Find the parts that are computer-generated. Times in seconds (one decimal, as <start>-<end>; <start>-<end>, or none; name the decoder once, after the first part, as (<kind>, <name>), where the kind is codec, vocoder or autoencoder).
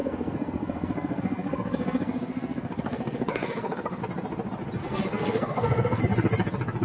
0.0-4.0 (codec, SNAC); 4.8-6.0